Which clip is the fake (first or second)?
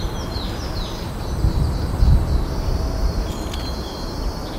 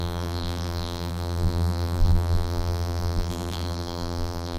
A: second